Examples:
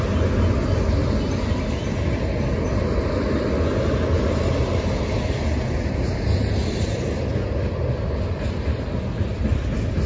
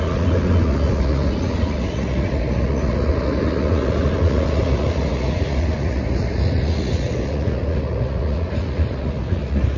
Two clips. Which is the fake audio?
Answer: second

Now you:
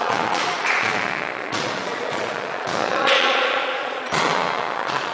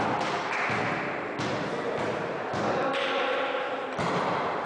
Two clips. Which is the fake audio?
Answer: first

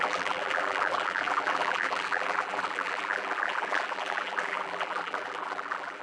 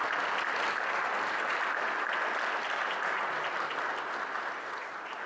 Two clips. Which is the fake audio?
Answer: first